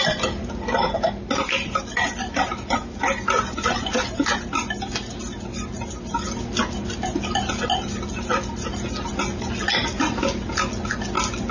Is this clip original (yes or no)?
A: yes